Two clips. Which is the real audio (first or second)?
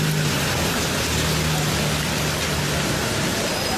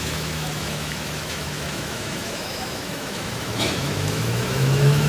first